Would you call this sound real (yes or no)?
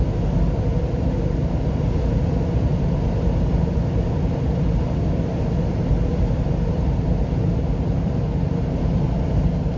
yes